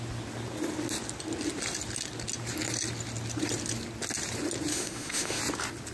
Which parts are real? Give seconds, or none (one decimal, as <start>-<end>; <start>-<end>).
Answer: 0.0-4.7; 5.4-5.9